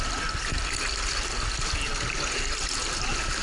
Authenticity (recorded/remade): recorded